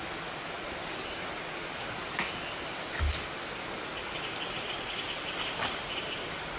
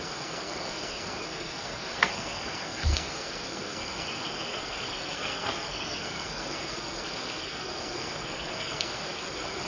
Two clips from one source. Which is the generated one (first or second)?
second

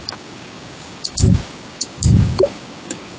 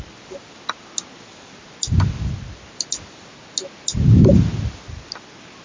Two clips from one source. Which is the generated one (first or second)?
first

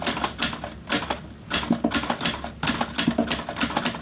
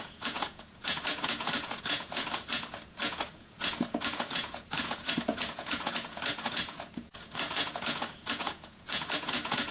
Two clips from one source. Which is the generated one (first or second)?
second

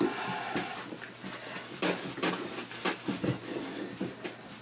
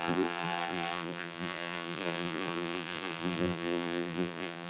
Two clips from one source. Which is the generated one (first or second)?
second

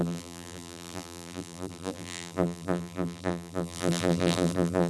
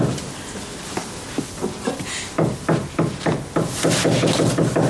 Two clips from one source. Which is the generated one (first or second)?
first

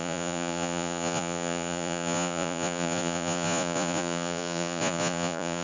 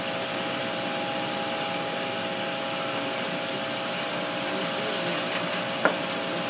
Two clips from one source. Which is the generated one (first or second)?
first